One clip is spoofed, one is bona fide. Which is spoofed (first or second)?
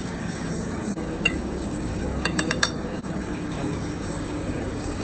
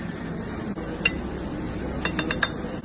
first